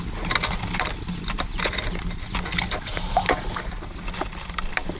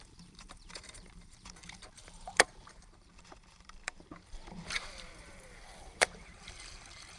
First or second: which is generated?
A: second